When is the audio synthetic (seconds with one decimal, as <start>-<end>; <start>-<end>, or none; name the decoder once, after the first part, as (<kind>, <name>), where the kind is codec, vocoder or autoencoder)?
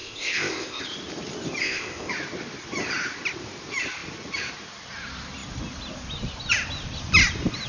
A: 0.0-0.8 (codec, ZipCodec); 1.6-2.1